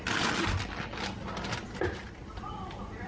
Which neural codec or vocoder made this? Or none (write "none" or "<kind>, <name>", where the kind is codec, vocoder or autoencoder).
none